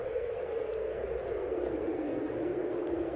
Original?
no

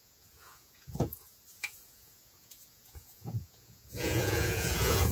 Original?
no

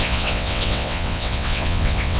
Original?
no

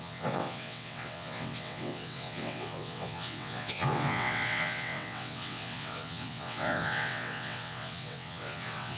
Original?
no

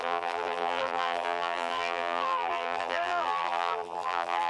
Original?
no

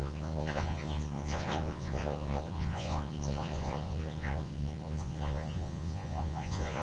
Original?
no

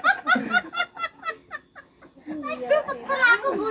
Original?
yes